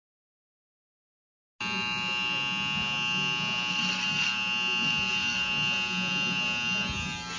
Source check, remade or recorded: recorded